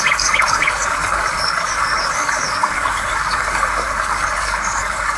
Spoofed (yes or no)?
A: yes